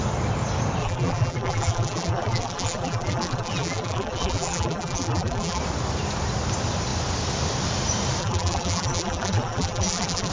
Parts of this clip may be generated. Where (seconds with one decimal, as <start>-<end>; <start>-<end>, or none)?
0.8-5.6; 8.2-10.3